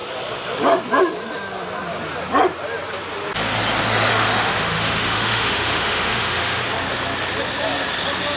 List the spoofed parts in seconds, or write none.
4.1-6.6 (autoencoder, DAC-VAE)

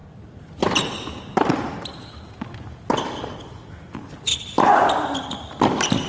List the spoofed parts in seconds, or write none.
4.3-6.1 (vocoder, BigVGAN v2)

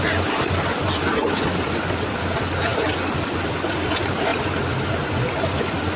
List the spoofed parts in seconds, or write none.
none